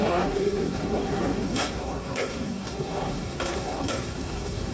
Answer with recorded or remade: remade